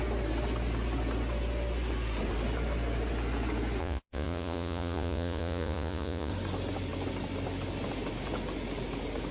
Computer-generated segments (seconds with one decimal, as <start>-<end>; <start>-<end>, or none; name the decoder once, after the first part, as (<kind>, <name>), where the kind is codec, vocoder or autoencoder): 3.8-6.3 (vocoder, Vocos)